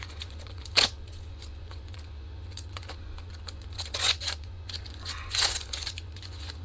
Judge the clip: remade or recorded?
remade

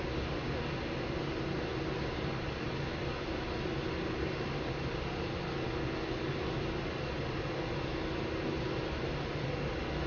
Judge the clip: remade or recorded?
recorded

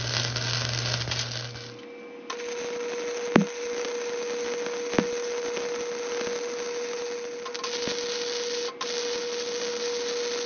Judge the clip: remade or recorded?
recorded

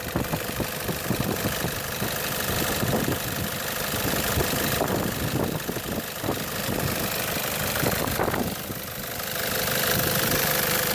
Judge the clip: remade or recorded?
remade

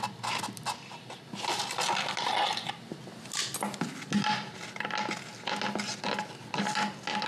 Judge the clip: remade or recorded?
recorded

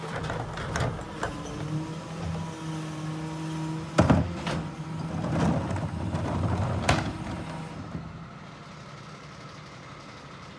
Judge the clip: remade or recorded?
recorded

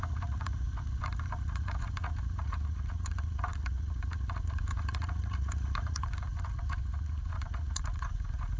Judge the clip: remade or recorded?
remade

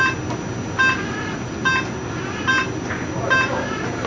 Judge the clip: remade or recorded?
recorded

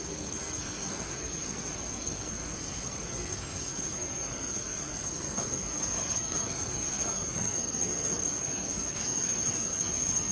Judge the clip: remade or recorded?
remade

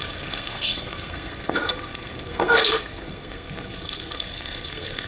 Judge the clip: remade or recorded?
remade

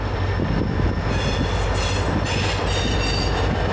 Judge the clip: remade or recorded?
recorded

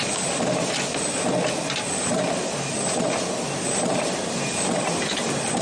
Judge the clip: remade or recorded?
recorded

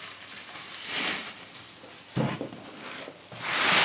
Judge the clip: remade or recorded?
recorded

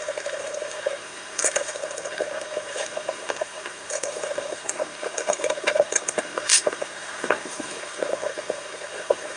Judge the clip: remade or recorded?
remade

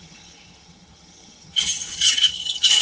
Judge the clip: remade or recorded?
remade